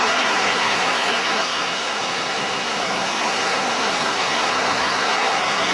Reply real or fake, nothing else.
fake